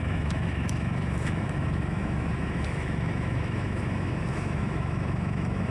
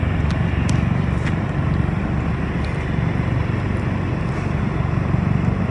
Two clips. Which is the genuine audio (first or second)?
second